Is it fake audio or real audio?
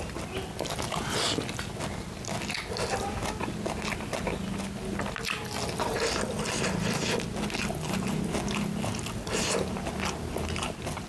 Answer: real